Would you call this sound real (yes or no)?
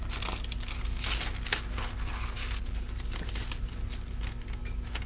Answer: yes